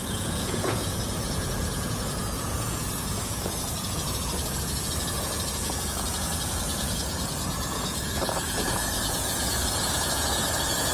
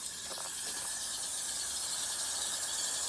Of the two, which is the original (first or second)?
second